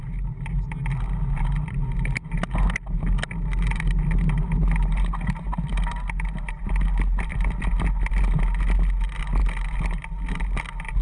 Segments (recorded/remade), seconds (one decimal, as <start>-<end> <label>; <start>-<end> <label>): 0.0-11.0 recorded